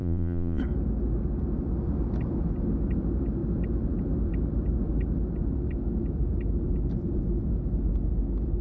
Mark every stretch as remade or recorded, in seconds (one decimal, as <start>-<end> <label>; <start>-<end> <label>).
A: 0.0-0.6 remade; 0.6-8.6 recorded